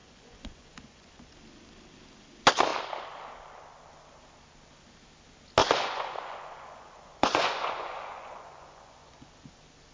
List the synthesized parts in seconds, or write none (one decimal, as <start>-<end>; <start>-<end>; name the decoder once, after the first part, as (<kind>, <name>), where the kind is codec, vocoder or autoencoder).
0.0-1.3 (vocoder, Vocos); 5.6-9.3